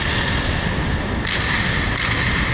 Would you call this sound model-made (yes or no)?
no